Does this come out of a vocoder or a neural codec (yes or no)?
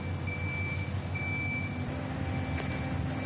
no